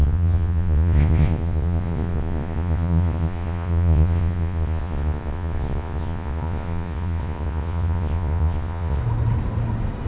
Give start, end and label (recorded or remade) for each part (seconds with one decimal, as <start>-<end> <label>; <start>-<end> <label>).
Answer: 0.0-9.0 remade; 9.0-10.1 recorded